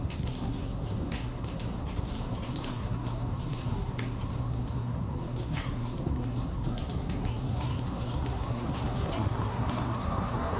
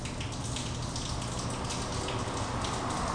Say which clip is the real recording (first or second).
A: second